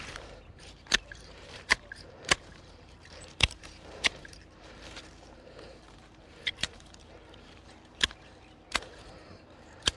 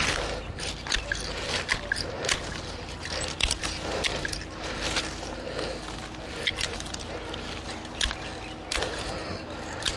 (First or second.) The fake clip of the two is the first